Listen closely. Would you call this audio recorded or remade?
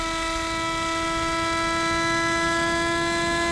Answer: recorded